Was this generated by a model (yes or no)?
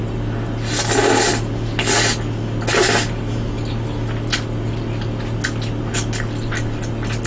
no